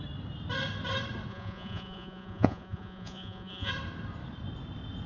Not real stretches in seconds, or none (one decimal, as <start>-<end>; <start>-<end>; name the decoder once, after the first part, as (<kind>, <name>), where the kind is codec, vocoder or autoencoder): 1.3-3.7 (vocoder, Vocos)